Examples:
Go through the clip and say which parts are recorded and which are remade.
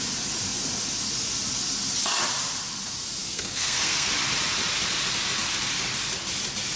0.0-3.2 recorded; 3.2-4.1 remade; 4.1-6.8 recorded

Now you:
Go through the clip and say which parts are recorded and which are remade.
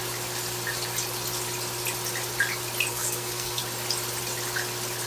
0.0-2.9 recorded; 2.9-3.6 remade; 3.6-5.1 recorded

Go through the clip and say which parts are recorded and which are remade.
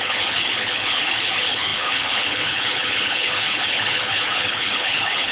0.0-5.3 remade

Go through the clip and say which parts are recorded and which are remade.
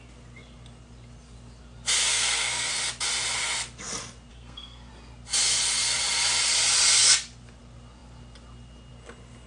0.0-2.1 recorded; 2.1-2.7 remade; 2.7-4.3 recorded; 4.3-4.9 remade; 4.9-9.5 recorded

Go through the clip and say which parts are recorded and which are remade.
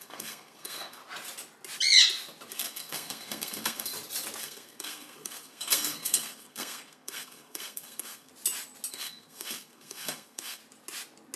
0.0-1.0 remade; 1.0-2.5 recorded; 2.5-3.9 remade; 3.9-4.4 recorded; 4.4-8.3 remade; 8.3-8.9 recorded; 8.9-10.6 remade; 10.6-11.4 recorded